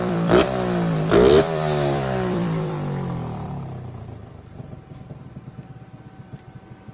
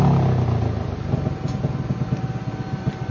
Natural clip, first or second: second